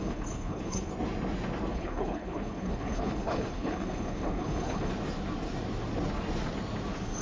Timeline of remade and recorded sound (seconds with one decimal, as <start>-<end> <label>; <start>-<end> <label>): 0.0-0.9 remade; 0.9-1.7 recorded; 1.7-4.9 remade; 4.9-7.2 recorded